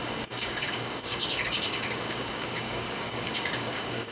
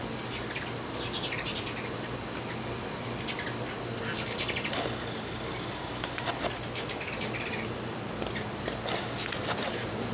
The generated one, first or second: first